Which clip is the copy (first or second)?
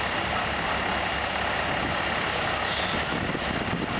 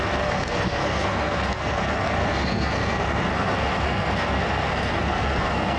second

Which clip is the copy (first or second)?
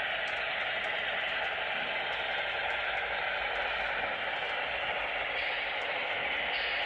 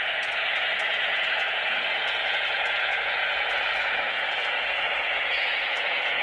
second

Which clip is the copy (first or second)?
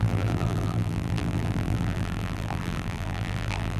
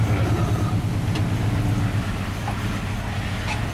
first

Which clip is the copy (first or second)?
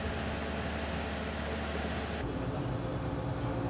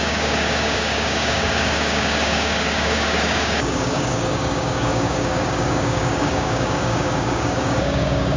second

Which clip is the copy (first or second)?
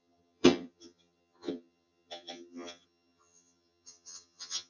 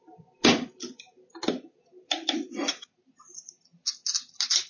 first